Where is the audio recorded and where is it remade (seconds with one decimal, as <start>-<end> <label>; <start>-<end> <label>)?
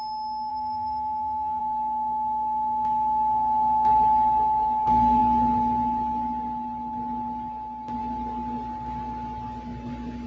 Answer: 0.0-0.5 recorded; 0.5-1.6 remade; 1.6-10.3 recorded